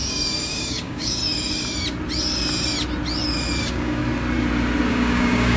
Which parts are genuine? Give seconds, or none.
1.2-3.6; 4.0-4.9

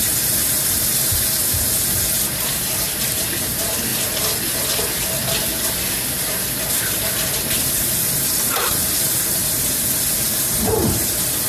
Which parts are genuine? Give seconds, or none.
1.4-2.5; 3.9-7.6; 9.4-10.1